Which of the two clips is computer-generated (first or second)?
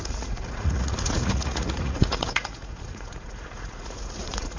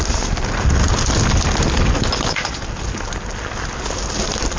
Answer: first